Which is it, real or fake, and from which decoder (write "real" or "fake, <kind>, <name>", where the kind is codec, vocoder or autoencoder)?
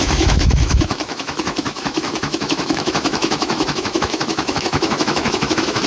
fake, autoencoder, DAC-VAE